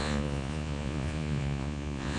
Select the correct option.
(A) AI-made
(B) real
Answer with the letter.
A